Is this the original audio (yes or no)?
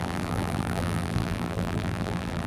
no